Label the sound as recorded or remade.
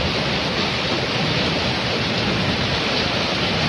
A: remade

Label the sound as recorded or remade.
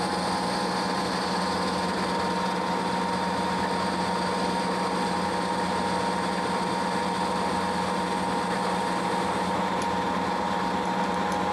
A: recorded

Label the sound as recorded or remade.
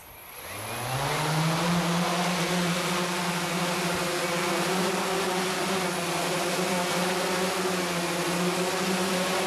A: recorded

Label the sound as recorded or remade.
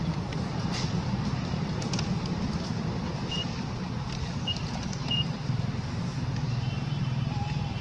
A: remade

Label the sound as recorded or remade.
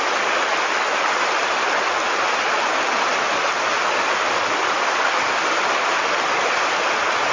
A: recorded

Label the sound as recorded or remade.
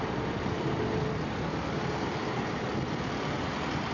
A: recorded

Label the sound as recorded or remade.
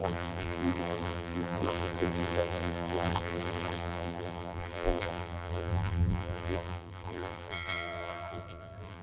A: remade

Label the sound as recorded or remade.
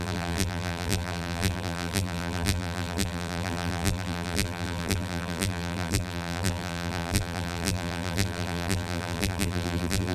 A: remade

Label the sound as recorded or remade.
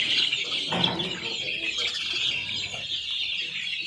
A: recorded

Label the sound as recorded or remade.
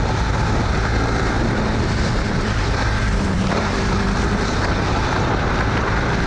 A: remade